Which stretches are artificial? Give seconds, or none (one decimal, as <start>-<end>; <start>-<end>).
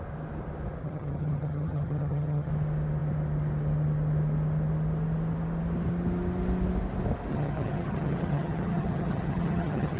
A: 0.8-2.5; 7.3-10.0